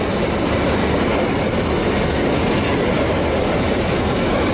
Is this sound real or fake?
real